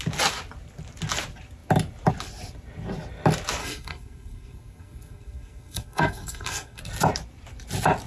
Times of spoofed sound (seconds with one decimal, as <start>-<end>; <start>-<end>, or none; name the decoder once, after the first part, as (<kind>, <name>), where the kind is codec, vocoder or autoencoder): 3.6-6.8 (codec, SNAC)